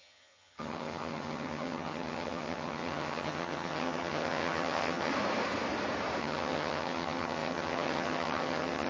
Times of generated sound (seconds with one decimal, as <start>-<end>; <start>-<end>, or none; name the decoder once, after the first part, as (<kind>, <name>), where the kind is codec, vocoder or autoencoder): 0.0-5.1 (vocoder, HiFi-GAN); 6.2-8.9